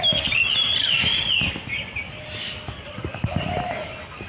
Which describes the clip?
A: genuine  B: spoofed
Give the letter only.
A